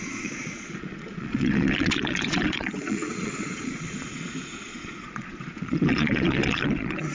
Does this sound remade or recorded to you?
remade